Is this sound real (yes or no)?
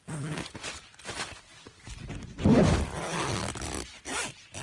yes